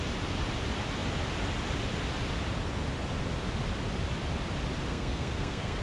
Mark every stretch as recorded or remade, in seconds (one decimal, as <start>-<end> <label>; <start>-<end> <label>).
0.0-4.9 recorded; 4.9-5.8 remade